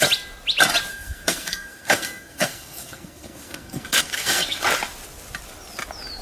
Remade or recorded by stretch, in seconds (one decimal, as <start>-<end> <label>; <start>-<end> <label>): 0.0-0.9 recorded; 0.9-4.6 remade; 4.6-6.2 recorded